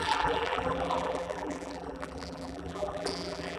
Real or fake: fake